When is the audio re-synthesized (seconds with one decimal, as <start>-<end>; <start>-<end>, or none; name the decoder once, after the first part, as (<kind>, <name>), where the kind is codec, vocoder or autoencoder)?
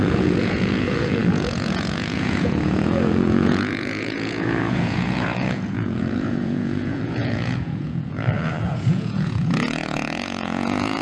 0.0-11.0 (vocoder, Vocos)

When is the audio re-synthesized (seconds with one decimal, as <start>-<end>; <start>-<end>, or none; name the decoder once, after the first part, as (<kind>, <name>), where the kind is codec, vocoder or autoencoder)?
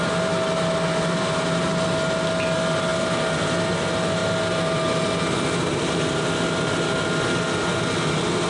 none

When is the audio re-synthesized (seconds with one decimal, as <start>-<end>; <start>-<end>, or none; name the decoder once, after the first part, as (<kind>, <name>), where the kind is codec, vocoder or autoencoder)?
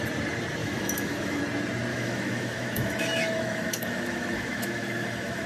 0.6-1.4 (autoencoder, DAC-VAE); 1.9-5.5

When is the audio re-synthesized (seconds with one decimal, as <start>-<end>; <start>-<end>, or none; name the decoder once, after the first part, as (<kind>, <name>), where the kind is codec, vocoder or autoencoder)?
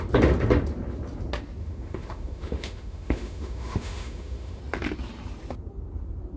1.6-4.6 (autoencoder, DAC-VAE)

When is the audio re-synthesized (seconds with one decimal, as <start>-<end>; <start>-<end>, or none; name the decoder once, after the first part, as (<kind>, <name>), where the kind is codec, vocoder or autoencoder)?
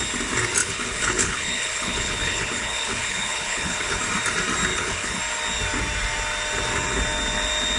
0.6-4.0 (codec, HILCodec); 4.7-5.2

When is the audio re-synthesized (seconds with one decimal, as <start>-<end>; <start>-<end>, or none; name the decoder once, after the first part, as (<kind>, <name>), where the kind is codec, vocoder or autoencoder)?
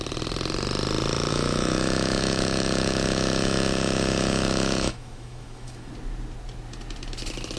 1.3-5.9 (autoencoder, DAC-VAE)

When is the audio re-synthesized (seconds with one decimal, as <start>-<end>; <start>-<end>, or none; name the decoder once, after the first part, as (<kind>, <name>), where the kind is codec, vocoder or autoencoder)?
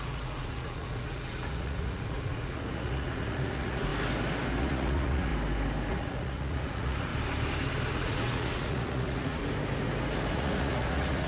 0.0-3.9 (vocoder, Vocos); 4.6-5.3; 5.9-7.1; 7.9-9.4; 10.3-11.3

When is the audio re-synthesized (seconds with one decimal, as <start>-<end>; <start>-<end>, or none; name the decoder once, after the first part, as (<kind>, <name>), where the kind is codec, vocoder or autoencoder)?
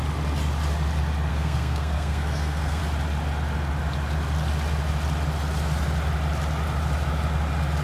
1.3-2.8 (codec, SNAC)